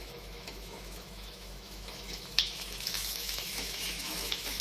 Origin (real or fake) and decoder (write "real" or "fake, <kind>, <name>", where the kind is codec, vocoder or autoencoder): fake, autoencoder, DAC-VAE